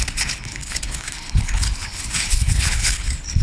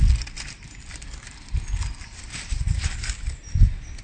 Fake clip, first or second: first